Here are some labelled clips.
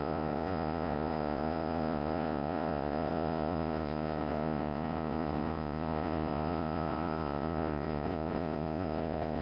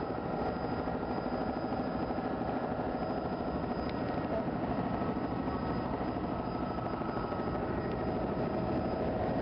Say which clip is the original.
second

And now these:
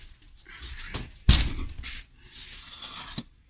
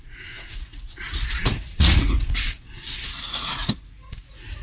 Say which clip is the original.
first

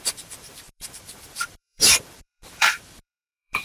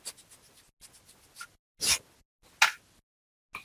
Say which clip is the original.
second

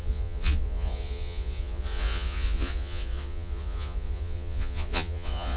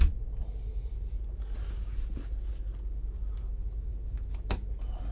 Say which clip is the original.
second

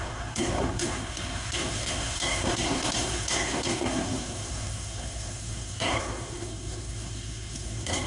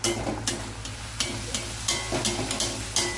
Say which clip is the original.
second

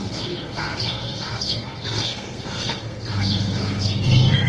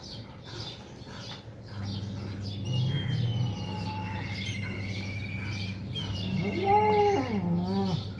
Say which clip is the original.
second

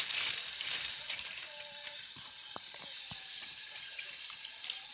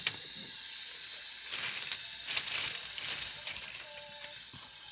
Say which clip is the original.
second